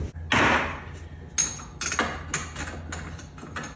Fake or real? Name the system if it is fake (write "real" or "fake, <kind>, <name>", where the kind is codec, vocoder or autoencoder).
real